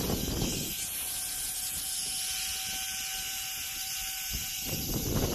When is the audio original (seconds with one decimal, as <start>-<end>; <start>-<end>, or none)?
0.0-5.3